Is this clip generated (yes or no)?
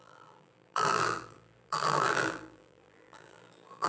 yes